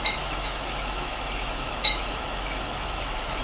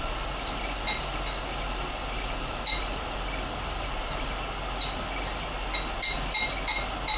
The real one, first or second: second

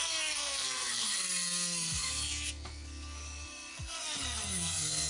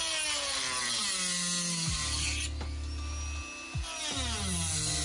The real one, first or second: second